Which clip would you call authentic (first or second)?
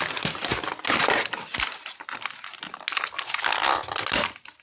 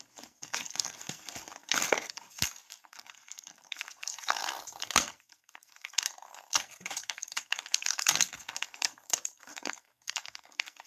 first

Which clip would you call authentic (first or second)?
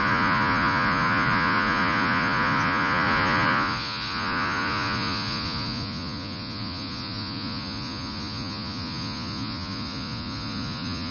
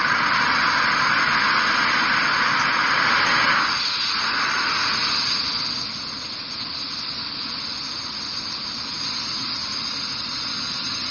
second